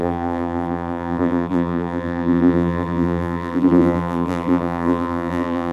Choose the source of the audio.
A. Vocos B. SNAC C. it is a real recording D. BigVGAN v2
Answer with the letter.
D